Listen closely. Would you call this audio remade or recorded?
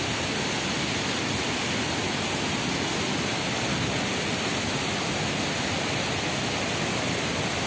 recorded